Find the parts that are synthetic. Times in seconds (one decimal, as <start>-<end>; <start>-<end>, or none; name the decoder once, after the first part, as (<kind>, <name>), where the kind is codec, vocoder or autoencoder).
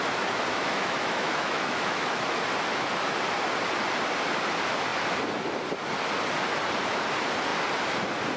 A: 0.5-2.4 (autoencoder, DAC-VAE)